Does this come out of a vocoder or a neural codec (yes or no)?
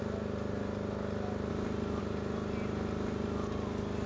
no